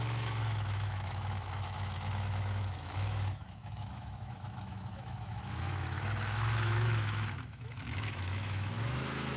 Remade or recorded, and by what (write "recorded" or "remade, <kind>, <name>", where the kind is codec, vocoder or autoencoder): remade, autoencoder, DAC-VAE